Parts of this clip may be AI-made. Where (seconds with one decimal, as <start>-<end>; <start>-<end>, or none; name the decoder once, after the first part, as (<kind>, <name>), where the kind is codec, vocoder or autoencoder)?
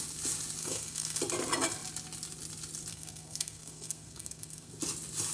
0.6-1.2 (codec, SNAC); 2.9-4.7